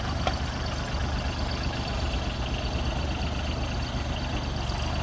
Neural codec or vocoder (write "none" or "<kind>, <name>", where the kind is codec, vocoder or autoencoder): none